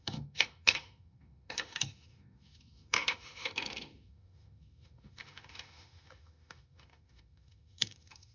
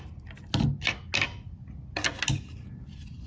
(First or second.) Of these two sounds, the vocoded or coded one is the first